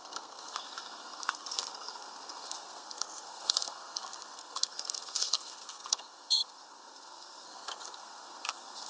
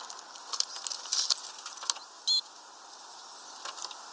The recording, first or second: second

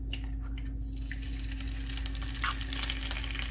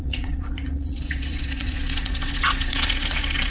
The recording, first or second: first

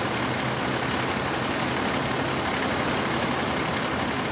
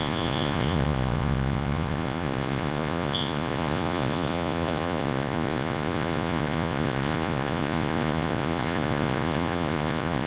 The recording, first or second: first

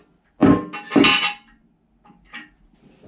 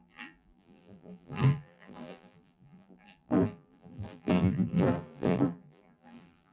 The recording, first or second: first